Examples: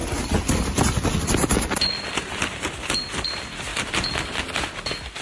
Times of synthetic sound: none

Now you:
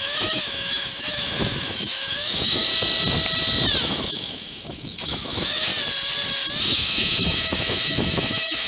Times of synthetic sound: 0.0-2.7 (autoencoder, DAC-VAE); 3.8-5.7; 6.6-8.7